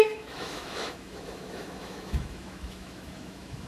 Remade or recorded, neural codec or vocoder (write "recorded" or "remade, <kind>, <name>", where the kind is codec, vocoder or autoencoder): remade, autoencoder, DAC-VAE